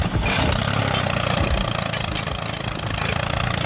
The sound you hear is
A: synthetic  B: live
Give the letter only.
B